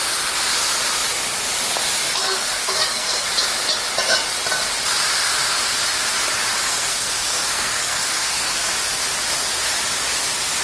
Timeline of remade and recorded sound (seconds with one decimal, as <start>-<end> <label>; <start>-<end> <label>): 0.0-2.0 recorded; 2.0-3.3 remade; 3.3-6.6 recorded; 6.6-8.7 remade; 8.7-10.6 recorded